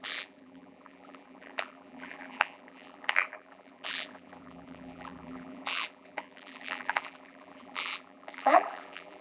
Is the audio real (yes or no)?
no